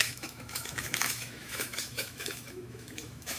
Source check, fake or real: fake